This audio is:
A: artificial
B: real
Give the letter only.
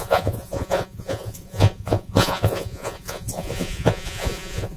A